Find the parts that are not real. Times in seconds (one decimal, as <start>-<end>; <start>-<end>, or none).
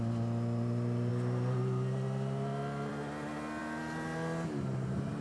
none